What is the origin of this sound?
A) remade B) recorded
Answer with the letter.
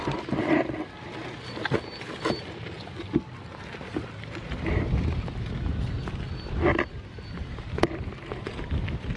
B